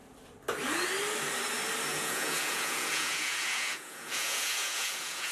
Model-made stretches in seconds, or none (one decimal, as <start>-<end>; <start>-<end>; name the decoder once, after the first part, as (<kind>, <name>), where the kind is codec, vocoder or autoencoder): 1.9-5.3 (vocoder, Vocos)